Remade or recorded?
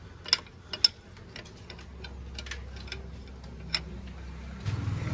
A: recorded